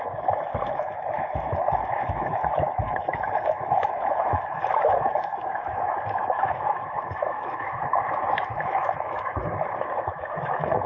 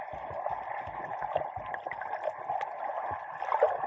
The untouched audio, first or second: second